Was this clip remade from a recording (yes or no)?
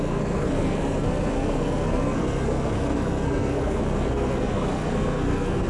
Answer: yes